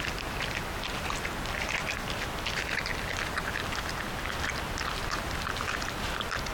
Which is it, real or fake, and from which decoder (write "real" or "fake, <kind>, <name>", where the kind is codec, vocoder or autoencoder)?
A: real